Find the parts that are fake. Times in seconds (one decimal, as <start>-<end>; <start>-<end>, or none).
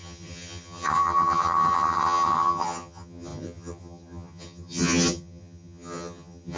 0.0-6.6